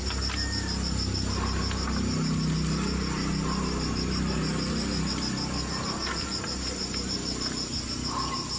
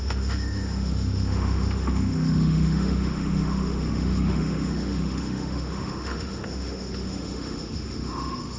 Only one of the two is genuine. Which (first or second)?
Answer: first